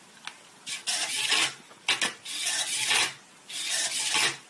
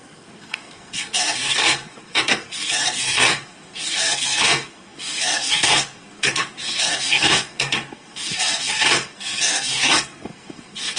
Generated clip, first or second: second